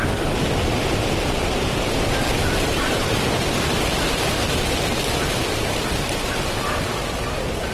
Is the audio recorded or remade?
recorded